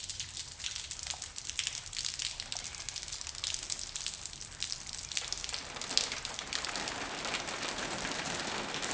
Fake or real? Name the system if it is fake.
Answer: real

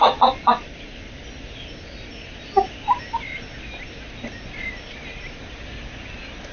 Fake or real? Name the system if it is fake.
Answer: real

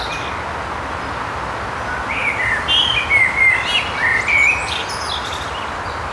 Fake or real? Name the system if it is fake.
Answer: real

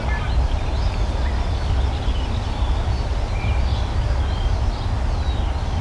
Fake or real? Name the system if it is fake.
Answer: real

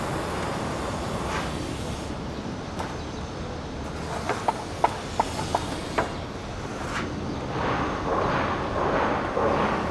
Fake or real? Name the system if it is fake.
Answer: real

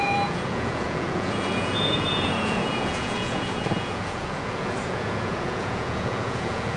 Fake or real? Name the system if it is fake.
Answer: fake, vocoder, Vocos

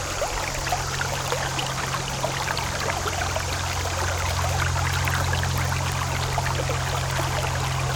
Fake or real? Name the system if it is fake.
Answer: real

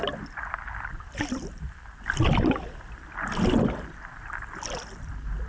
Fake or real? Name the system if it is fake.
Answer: real